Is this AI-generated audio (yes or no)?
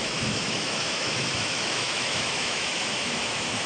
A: yes